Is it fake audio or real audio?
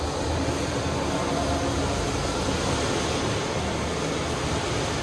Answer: real